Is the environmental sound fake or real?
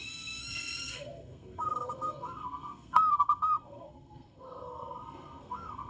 fake